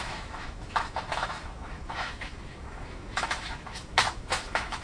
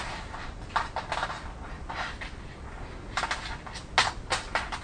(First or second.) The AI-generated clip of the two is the first